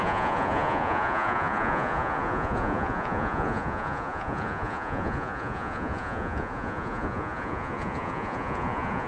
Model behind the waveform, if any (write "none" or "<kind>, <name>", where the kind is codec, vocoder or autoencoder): vocoder, Vocos